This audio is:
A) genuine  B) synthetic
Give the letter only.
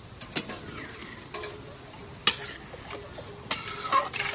A